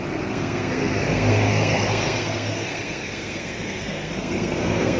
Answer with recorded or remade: remade